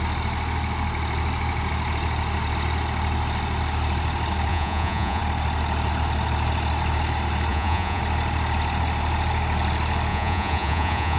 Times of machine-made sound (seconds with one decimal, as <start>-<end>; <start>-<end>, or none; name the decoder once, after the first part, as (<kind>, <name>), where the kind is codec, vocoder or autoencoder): 4.5-5.2 (vocoder, Vocos); 7.5-8.0; 10.1-11.2

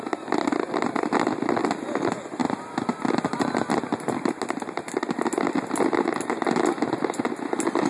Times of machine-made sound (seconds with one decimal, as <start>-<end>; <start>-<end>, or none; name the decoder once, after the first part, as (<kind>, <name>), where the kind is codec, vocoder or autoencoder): none

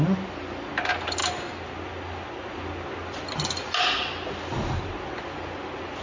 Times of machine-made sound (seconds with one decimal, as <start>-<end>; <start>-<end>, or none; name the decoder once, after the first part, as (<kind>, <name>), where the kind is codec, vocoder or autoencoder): none

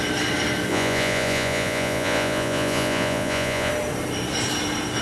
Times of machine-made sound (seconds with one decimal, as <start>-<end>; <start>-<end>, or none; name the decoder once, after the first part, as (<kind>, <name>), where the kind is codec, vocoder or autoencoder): 0.7-3.7 (vocoder, Vocos)

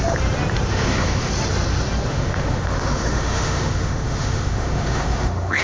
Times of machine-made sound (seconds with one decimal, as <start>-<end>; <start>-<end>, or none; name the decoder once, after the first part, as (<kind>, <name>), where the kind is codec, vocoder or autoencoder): 0.7-1.3 (autoencoder, DAC-VAE); 2.1-5.6

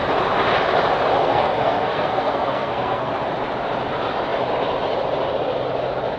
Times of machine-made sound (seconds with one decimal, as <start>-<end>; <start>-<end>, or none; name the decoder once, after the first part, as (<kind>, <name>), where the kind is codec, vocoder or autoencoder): 1.2-3.1 (codec, SNAC)

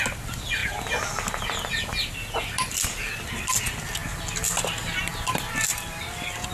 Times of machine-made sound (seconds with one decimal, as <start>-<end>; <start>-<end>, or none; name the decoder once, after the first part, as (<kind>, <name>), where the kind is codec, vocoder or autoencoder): 5.7-6.5 (vocoder, BigVGAN v2)

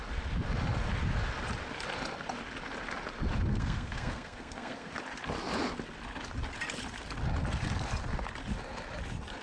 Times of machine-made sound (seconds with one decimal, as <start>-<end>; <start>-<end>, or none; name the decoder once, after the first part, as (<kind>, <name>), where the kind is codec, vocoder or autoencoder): 3.5-4.9 (codec, SNAC)